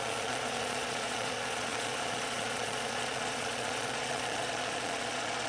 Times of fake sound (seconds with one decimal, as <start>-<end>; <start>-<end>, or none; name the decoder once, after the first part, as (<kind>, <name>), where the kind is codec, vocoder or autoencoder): 0.0-5.5 (vocoder, Vocos)